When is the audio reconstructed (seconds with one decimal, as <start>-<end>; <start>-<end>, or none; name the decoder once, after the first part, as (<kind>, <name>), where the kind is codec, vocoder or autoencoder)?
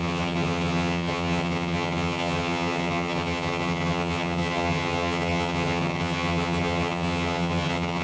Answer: 0.0-8.0 (vocoder, HiFi-GAN)